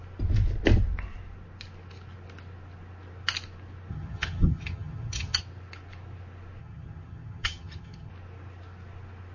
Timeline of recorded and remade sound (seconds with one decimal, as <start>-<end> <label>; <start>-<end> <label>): 0.0-3.9 recorded; 3.9-5.4 remade; 5.4-6.6 recorded; 6.6-8.1 remade; 8.1-9.3 recorded